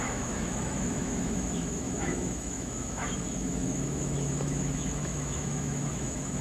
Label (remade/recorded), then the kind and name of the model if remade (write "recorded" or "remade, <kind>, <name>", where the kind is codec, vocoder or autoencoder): remade, autoencoder, DAC-VAE